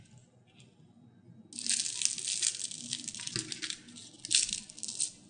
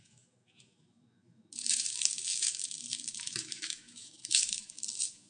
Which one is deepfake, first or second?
second